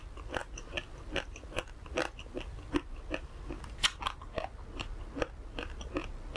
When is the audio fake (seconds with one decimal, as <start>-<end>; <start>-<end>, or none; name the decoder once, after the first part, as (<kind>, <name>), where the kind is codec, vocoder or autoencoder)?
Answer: none